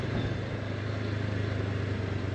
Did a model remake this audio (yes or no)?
no